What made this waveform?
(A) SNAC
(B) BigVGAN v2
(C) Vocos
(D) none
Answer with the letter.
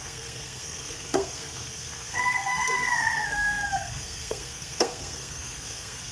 A